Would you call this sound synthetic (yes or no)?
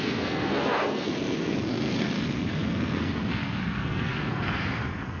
yes